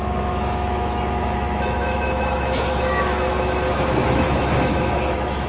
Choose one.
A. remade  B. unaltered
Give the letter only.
A